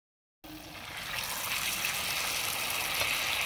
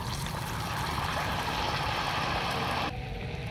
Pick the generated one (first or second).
second